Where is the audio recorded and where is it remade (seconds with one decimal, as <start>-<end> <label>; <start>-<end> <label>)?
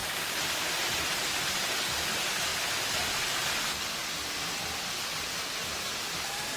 0.0-6.6 recorded